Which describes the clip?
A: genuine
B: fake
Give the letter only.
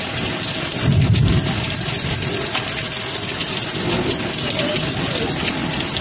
A